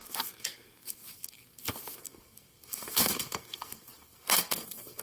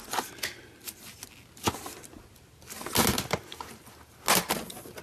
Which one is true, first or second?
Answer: second